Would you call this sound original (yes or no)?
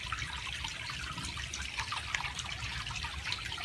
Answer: yes